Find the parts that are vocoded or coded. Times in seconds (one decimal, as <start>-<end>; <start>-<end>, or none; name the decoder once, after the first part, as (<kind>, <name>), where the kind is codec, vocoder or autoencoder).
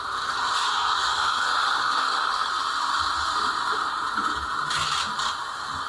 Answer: 1.1-2.5 (codec, SNAC)